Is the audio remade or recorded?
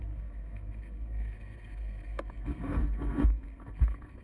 remade